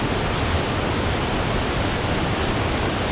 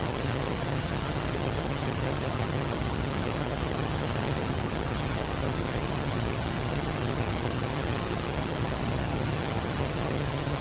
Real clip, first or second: first